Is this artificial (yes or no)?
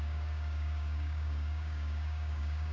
yes